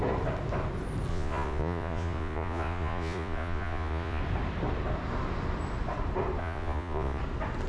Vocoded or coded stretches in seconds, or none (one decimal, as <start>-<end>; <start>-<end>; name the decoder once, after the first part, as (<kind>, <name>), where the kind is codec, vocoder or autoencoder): 1.1-4.2 (vocoder, Vocos); 6.4-7.2